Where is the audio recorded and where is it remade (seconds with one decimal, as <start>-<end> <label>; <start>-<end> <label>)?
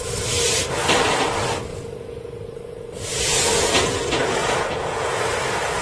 0.0-1.7 recorded; 1.7-5.2 remade; 5.2-5.8 recorded